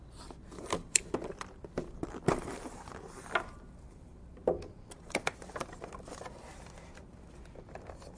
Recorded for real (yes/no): no